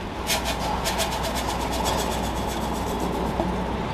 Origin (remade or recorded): recorded